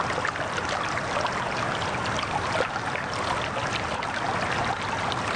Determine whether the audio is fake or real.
real